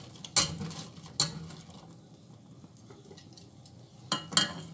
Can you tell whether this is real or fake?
real